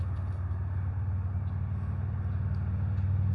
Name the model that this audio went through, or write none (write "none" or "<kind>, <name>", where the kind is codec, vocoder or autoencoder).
none